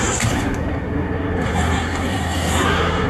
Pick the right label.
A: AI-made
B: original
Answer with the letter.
A